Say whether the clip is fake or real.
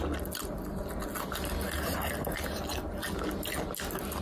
real